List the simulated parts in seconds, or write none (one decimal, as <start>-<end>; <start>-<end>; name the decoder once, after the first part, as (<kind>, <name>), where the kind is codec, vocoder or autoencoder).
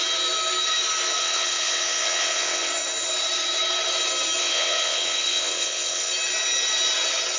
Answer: 1.2-2.7 (vocoder, WaveNeXt); 4.4-6.1